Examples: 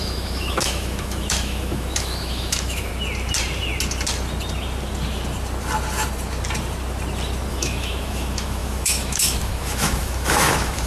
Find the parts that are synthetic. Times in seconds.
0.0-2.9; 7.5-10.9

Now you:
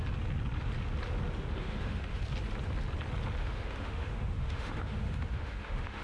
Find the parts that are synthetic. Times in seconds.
1.6-2.2; 3.4-6.0

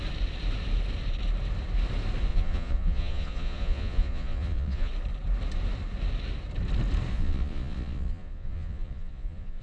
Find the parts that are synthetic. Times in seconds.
2.3-4.9; 7.1-9.6

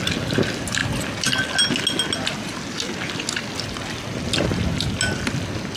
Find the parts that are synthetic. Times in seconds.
none

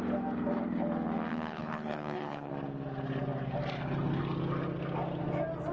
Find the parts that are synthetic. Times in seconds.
1.3-2.5

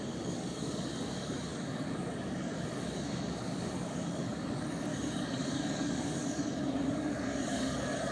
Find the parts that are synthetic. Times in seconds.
0.0-8.1